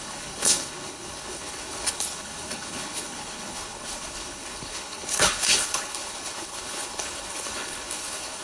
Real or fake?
fake